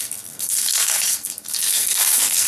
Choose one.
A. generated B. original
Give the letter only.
A